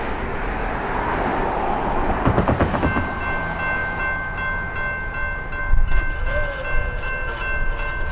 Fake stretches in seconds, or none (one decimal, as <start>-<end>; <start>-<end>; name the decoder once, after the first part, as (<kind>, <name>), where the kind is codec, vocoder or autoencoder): none